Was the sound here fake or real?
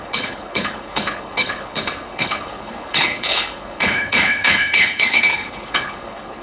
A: fake